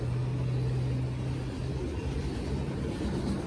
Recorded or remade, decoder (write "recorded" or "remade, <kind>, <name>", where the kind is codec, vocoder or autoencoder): recorded